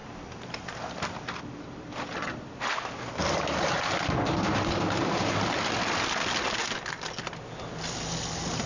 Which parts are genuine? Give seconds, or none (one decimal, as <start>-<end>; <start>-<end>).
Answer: 0.0-8.7